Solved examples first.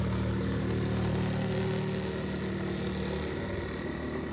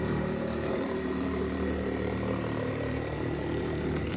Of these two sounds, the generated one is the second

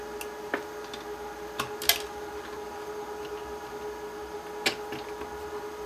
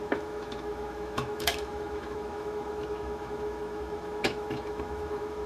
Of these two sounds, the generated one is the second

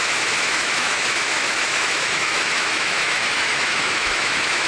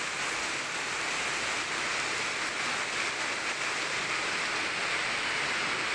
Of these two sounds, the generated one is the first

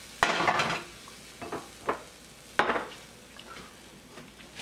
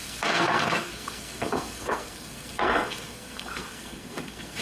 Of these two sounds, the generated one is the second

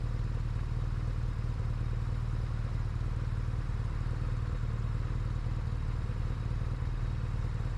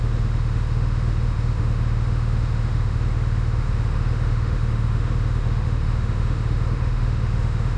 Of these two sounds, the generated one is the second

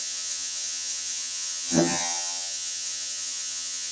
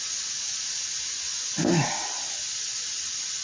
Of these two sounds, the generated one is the first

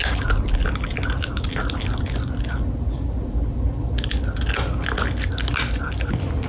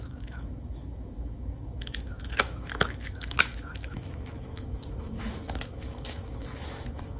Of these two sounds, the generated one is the second